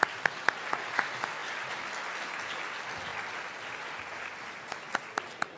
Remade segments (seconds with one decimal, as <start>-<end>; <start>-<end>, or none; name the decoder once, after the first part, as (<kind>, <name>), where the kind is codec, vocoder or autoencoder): none